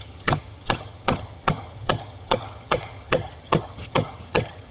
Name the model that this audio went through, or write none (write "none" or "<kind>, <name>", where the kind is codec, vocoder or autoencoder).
vocoder, HiFi-GAN